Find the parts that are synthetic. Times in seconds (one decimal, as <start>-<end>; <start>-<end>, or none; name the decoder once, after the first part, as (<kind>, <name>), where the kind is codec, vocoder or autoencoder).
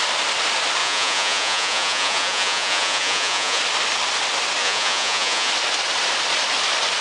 0.8-3.6 (vocoder, Vocos); 4.6-5.5